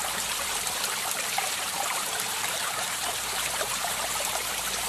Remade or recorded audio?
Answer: remade